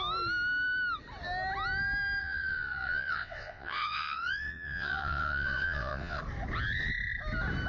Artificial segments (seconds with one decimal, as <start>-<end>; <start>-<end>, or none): 2.2-6.2